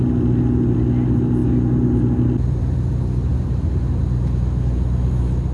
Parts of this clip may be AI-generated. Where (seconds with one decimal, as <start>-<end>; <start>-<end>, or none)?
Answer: none